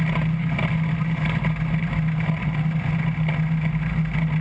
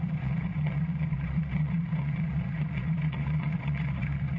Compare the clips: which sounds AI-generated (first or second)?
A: second